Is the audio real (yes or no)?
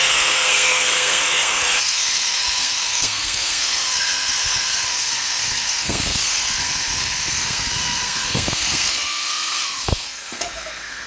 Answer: no